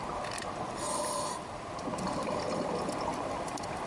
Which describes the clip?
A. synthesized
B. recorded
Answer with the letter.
B